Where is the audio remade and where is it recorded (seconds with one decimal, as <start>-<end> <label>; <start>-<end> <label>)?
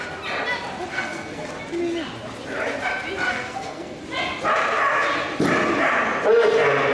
0.0-0.9 recorded; 0.9-1.5 remade; 1.5-3.3 recorded; 3.3-4.0 remade; 4.0-6.9 recorded